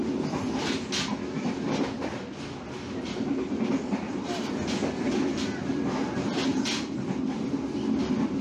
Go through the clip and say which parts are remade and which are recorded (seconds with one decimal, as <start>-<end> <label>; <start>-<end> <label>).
0.0-8.4 recorded